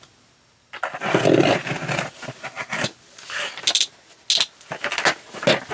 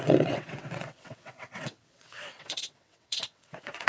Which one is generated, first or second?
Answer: second